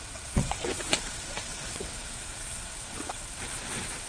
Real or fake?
fake